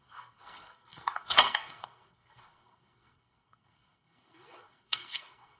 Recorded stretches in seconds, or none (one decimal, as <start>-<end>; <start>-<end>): none